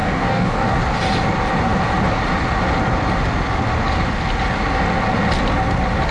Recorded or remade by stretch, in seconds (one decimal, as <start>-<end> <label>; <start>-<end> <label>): 0.0-0.8 remade; 0.8-6.1 recorded